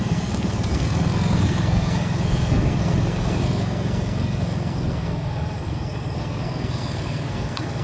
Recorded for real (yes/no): no